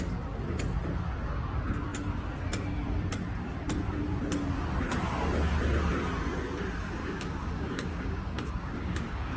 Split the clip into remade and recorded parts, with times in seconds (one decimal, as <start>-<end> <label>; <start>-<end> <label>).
0.0-7.0 recorded; 7.0-9.4 remade